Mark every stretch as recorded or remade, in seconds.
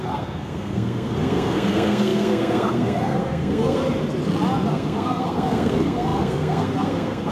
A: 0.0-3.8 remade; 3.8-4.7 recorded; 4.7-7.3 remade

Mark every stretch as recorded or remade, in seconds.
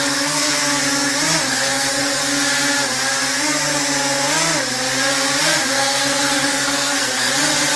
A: 0.0-0.6 remade; 0.6-1.5 recorded; 1.5-2.2 remade; 2.2-5.7 recorded; 5.7-7.3 remade; 7.3-7.8 recorded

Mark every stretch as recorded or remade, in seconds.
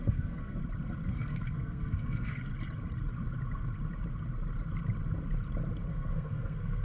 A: 0.0-0.6 remade; 0.6-1.1 recorded; 1.1-2.5 remade; 2.5-5.9 recorded; 5.9-6.8 remade